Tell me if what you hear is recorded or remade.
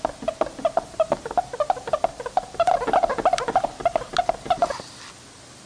recorded